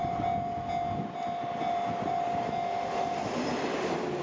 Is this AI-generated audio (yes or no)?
no